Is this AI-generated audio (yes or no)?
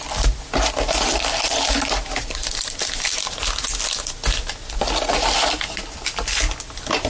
no